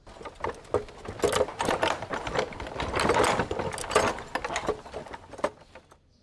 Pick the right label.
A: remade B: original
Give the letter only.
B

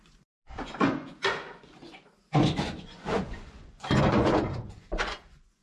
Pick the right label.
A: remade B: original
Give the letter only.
A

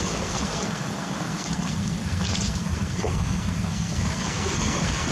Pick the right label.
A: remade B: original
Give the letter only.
A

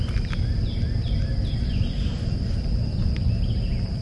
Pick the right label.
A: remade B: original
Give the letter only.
B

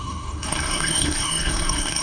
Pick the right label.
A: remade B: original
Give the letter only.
A